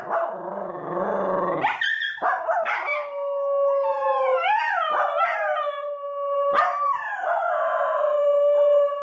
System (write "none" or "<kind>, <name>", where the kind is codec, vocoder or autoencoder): none